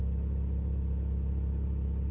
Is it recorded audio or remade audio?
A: recorded